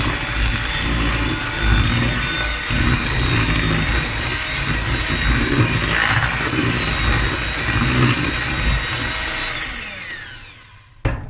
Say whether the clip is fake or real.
real